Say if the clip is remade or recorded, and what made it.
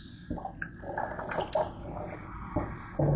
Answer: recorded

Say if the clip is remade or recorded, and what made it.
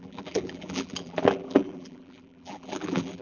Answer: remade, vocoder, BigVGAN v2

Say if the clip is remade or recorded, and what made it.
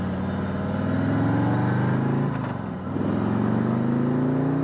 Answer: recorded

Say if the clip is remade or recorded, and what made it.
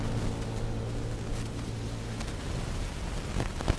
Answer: recorded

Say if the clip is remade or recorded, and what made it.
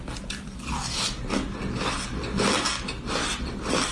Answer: recorded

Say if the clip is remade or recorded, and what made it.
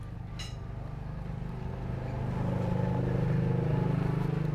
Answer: recorded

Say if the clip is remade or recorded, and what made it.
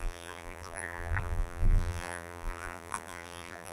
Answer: remade, vocoder, BigVGAN v2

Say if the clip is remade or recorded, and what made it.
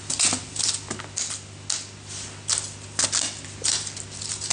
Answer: recorded